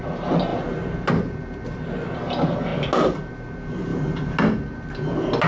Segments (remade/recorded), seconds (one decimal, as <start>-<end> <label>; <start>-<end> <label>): 0.0-5.5 recorded